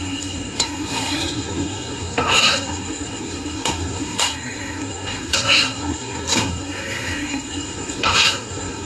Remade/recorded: remade